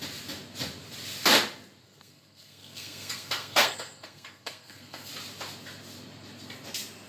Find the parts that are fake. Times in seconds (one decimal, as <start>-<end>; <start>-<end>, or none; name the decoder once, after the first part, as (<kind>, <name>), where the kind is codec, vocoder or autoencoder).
1.8-5.1 (codec, SNAC)